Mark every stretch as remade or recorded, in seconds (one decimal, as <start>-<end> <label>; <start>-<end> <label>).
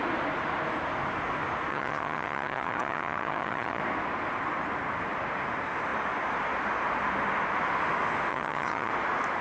0.0-1.7 recorded; 1.7-3.8 remade; 3.8-8.3 recorded; 8.3-8.9 remade; 8.9-9.4 recorded